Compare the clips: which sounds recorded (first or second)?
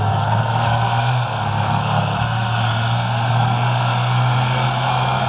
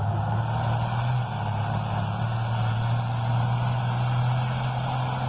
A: second